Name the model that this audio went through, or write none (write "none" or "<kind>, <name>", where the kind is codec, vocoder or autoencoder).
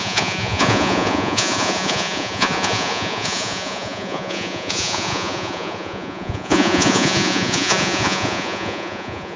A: vocoder, Vocos